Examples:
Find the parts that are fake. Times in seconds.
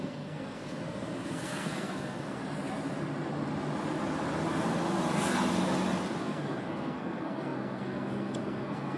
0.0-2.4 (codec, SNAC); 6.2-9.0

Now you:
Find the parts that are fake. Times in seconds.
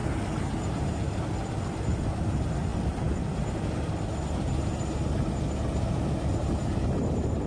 none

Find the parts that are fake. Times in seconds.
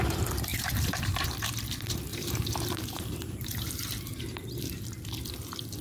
0.5-1.5 (vocoder, BigVGAN v2); 2.1-5.0